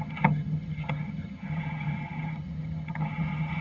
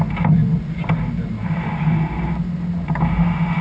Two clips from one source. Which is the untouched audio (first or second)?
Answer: second